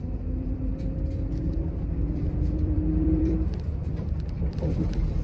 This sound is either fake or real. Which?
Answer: fake